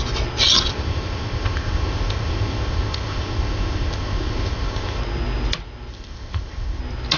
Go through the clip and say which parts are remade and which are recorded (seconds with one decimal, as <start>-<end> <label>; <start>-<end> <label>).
0.0-0.7 recorded; 0.7-5.0 remade; 5.0-5.9 recorded; 5.9-6.8 remade; 6.8-7.2 recorded